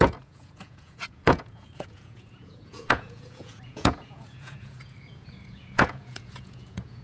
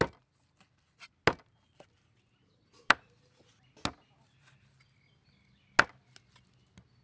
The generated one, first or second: first